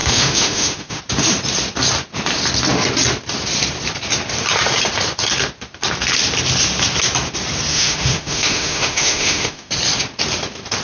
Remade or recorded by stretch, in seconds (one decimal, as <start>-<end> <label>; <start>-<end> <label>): 0.0-1.0 remade; 1.0-7.7 recorded; 7.7-9.7 remade; 9.7-10.8 recorded